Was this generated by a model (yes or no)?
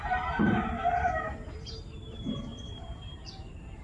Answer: yes